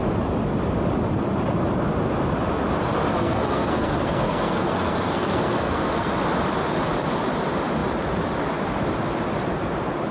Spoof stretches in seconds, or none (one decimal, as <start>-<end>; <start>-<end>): 3.1-6.1